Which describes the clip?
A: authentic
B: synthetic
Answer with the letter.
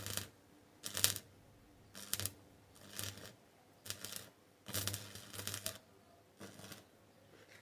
A